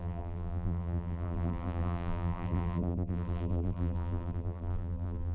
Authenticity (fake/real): fake